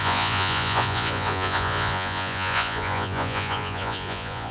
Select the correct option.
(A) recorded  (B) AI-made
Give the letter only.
B